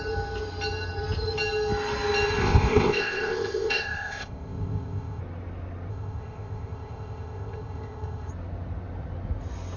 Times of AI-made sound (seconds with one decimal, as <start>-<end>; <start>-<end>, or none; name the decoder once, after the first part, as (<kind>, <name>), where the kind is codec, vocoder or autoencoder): 2.4-5.2 (codec, ZipCodec); 5.9-8.3

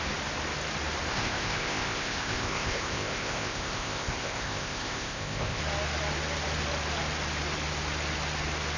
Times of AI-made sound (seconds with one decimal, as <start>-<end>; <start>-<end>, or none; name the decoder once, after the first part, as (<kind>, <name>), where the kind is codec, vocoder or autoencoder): 1.1-5.6 (codec, ZipCodec)

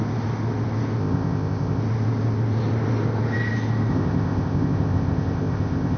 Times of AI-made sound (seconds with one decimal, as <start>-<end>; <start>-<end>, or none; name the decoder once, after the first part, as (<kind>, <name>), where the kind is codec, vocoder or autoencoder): 1.0-1.8 (codec, ZipCodec); 3.9-6.0

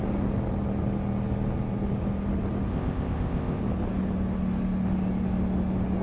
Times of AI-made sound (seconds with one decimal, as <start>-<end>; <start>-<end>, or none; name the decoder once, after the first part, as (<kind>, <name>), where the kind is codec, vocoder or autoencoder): 2.7-3.6 (codec, ZipCodec)